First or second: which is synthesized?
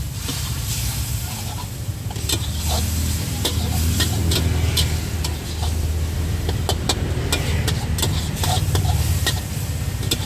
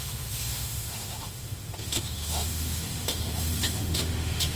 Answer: second